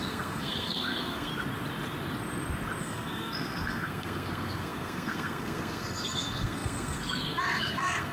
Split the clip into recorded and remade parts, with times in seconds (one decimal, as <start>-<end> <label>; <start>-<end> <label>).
0.0-1.3 remade; 1.3-2.8 recorded; 2.8-8.1 remade